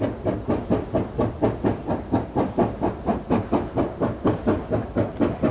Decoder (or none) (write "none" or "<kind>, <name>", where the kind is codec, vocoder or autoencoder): none